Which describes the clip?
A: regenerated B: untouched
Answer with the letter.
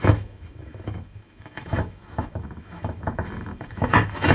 A